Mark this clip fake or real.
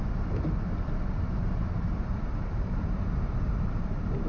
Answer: fake